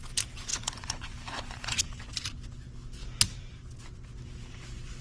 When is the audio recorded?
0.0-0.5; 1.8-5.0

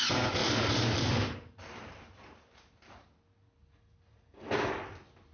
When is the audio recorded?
0.0-0.4; 3.2-5.3

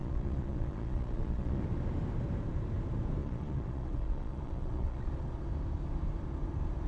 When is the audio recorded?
1.6-3.2; 5.1-6.9

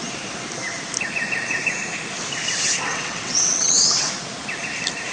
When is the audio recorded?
0.0-2.9; 4.1-5.1